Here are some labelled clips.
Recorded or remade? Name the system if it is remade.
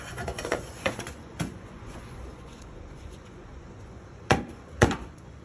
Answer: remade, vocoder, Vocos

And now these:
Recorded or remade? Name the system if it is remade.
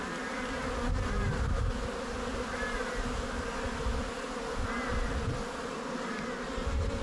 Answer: recorded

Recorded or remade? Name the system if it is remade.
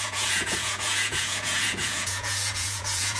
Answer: remade, vocoder, Vocos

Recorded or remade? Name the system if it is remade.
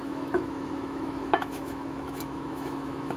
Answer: remade, autoencoder, DAC-VAE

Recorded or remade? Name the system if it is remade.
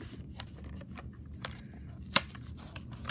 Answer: recorded